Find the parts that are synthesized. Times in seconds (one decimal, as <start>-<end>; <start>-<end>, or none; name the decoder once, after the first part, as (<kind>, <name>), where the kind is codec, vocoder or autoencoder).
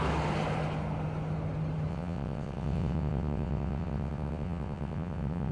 1.9-5.5 (vocoder, WaveNeXt)